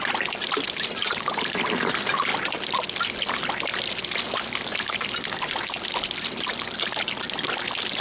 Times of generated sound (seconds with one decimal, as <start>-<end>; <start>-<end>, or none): none